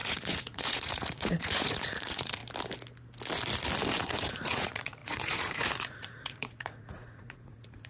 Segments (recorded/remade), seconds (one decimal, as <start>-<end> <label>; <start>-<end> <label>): 0.0-2.4 remade; 2.4-4.0 recorded; 4.0-7.9 remade